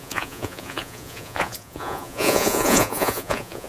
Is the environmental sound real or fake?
fake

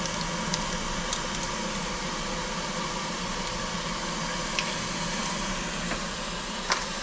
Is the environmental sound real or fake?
real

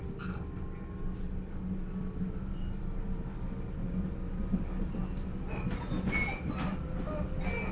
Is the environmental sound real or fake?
real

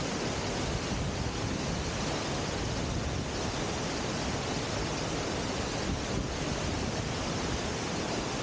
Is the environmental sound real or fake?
real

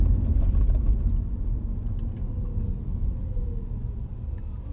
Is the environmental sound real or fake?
real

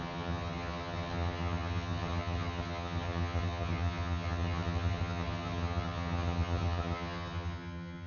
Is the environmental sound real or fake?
fake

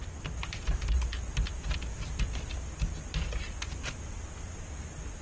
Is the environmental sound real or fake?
real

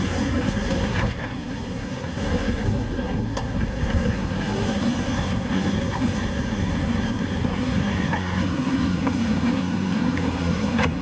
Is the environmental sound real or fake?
fake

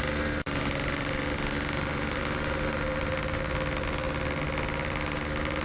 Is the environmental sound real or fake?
real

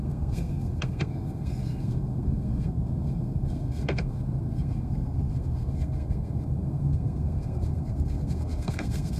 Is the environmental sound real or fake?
fake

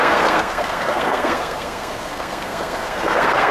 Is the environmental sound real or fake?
fake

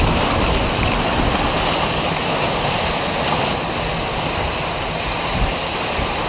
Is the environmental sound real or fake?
real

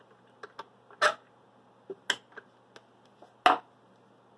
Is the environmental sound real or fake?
real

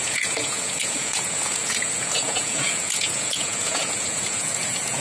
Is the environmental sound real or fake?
fake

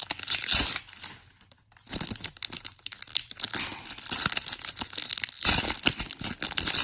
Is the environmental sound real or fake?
real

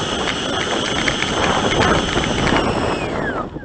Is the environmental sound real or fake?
real